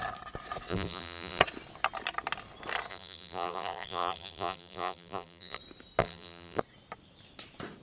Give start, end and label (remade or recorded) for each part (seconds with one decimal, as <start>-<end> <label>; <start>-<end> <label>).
0.0-0.7 recorded; 0.7-1.4 remade; 1.4-2.9 recorded; 2.9-5.6 remade; 5.6-6.0 recorded; 6.0-6.6 remade; 6.6-7.8 recorded